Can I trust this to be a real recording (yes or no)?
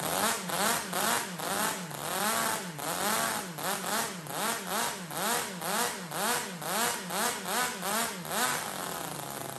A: yes